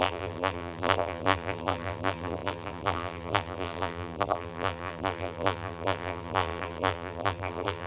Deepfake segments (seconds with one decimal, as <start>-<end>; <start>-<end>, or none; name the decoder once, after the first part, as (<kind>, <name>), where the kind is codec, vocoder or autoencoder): 0.0-7.9 (vocoder, BigVGAN v2)